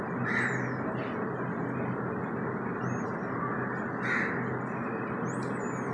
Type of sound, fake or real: real